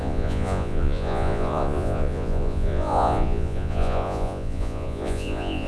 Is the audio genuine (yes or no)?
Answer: no